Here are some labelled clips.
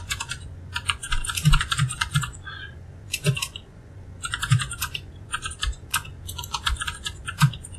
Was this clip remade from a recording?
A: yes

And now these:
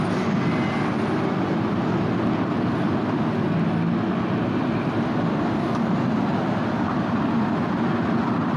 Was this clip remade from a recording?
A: no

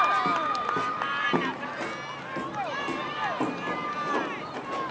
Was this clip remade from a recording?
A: no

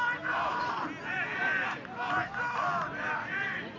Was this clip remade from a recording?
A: no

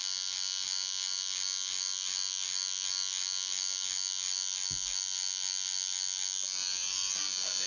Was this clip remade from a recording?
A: no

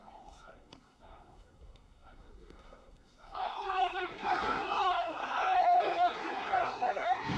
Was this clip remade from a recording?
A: yes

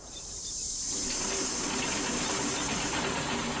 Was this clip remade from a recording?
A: yes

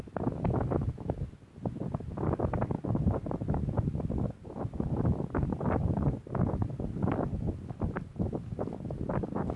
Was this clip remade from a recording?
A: no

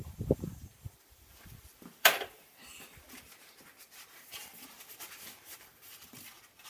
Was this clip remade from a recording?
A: yes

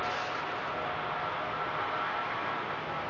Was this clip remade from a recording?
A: no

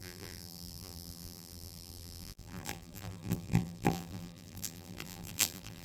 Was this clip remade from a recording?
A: yes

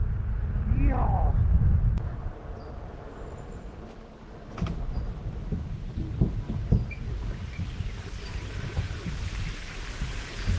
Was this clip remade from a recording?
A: no